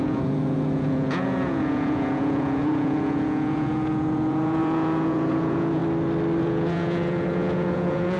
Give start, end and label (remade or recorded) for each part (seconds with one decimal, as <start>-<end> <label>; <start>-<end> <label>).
0.0-5.8 remade; 5.8-6.4 recorded; 6.4-8.2 remade